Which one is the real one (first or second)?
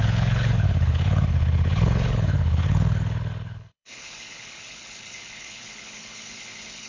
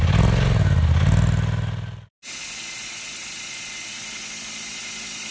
second